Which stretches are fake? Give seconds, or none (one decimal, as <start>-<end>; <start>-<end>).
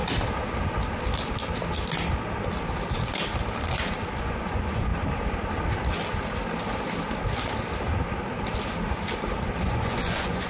4.1-4.9; 9.6-10.5